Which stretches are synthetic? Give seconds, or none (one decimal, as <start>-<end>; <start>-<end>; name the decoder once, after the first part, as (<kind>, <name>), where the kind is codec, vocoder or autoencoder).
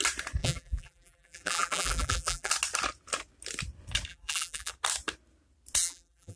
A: 0.4-2.5 (vocoder, BigVGAN v2); 4.1-4.7; 5.8-6.4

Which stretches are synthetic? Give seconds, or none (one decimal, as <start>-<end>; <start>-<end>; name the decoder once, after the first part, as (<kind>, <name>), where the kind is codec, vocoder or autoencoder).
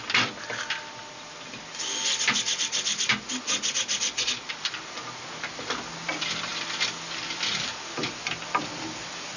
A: none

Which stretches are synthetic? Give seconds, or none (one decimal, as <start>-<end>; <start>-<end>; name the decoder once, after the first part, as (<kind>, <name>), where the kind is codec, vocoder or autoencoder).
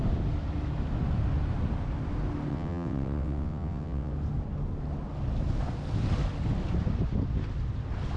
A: 2.5-4.1 (vocoder, WaveNeXt)